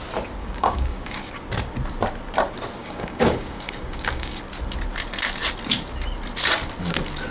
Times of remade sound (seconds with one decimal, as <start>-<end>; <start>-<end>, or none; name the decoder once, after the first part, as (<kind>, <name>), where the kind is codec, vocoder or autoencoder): 0.4-1.3 (codec, DAC); 2.8-4.4